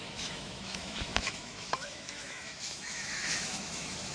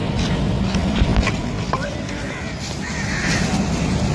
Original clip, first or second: second